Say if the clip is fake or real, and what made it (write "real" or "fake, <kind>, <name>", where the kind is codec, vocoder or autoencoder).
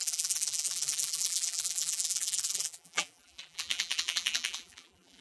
fake, vocoder, BigVGAN v2